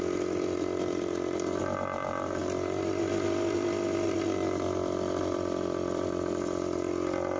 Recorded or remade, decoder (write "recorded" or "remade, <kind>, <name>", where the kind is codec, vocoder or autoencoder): recorded